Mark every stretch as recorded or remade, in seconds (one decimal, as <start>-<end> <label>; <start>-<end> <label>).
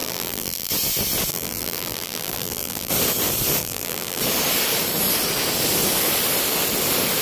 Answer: 0.0-0.7 remade; 0.7-1.3 recorded; 1.3-2.9 remade; 2.9-3.6 recorded; 3.6-4.2 remade; 4.2-7.2 recorded